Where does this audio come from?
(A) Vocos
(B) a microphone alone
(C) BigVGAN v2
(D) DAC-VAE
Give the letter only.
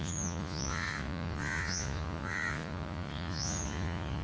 A